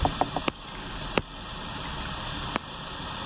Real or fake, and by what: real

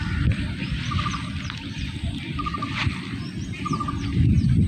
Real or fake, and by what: fake, vocoder, BigVGAN v2